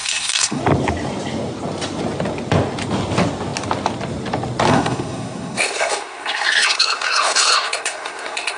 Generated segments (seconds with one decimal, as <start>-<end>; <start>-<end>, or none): 0.0-0.6; 4.7-8.6